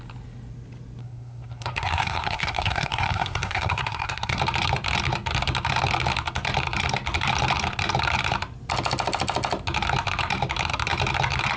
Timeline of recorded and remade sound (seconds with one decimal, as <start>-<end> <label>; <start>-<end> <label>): 0.0-1.0 recorded; 1.0-4.4 remade; 4.4-11.6 recorded